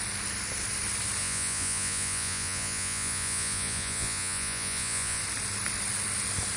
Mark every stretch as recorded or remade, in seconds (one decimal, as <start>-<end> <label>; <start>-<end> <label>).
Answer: 0.0-1.2 recorded; 1.2-5.2 remade; 5.2-6.6 recorded